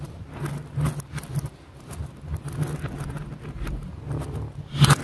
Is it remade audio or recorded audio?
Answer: recorded